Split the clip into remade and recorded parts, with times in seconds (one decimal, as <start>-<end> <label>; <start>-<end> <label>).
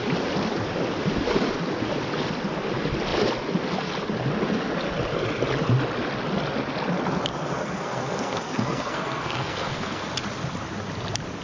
0.0-7.3 recorded; 7.3-10.1 remade; 10.1-11.4 recorded